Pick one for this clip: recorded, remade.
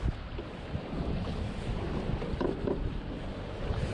recorded